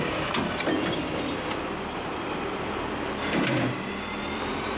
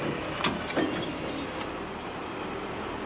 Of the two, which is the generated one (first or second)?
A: first